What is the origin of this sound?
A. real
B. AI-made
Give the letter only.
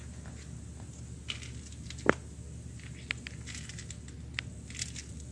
A